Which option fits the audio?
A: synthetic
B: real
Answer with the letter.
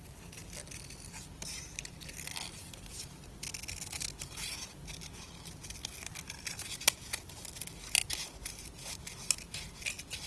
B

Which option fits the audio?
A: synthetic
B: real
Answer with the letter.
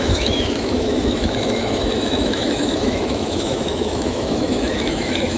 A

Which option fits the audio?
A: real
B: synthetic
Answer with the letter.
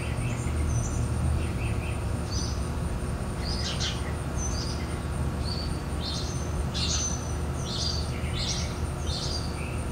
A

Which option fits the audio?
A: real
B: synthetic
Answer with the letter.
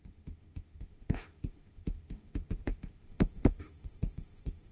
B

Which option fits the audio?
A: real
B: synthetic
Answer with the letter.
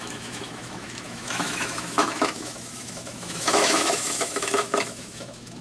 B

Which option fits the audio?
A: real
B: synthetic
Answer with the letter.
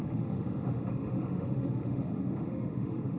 B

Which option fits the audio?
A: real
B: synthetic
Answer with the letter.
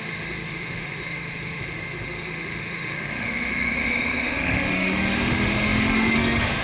B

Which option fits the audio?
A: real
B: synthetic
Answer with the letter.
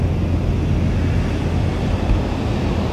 A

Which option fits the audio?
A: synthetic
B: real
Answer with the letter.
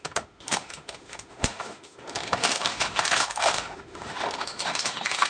A